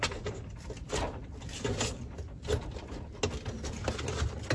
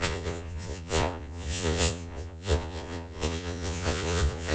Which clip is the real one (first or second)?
first